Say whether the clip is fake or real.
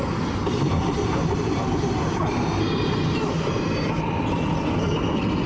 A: real